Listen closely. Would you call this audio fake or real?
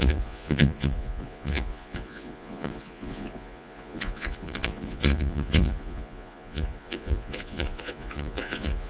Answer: fake